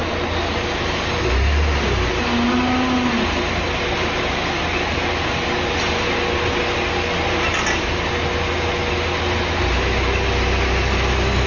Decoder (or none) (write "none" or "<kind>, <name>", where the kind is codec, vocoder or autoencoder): none